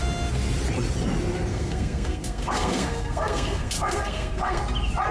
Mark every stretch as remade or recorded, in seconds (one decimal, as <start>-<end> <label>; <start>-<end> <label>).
0.0-1.5 recorded; 1.5-4.6 remade; 4.6-5.1 recorded